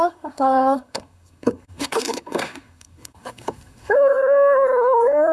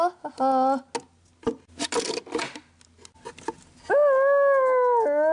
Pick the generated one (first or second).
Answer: first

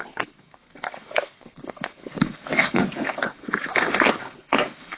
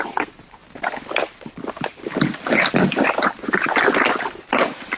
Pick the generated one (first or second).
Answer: first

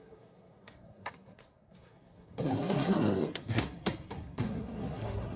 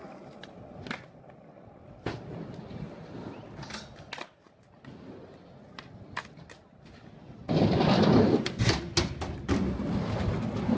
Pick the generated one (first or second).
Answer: first